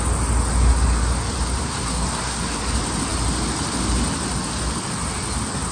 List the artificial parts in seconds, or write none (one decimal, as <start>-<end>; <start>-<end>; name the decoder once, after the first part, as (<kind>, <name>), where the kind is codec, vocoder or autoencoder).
1.6-2.6 (codec, SNAC)